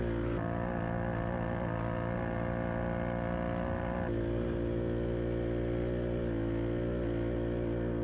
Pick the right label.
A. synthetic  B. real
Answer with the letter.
B